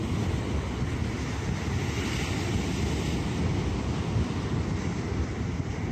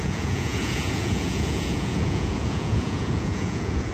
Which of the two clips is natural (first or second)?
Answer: first